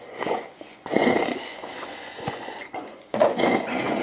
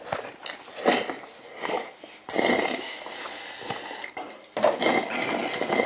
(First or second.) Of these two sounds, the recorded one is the second